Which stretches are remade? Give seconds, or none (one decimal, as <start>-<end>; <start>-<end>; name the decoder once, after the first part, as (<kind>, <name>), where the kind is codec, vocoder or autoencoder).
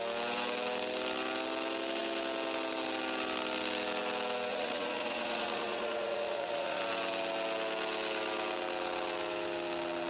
4.5-6.8 (vocoder, Vocos)